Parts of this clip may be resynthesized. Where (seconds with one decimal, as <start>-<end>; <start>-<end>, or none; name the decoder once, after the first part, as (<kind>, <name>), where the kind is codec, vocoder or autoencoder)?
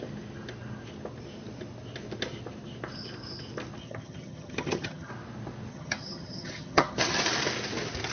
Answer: 3.8-5.1 (vocoder, HiFi-GAN); 5.7-7.2